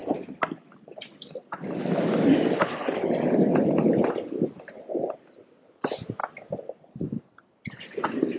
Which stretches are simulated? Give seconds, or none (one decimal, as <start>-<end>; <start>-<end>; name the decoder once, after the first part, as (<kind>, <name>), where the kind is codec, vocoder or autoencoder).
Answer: none